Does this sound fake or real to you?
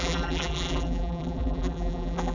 fake